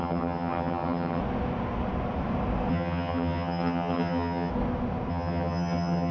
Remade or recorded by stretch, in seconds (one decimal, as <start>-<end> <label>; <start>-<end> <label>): 0.0-1.2 remade; 1.2-2.7 recorded; 2.7-4.5 remade; 4.5-5.1 recorded; 5.1-6.1 remade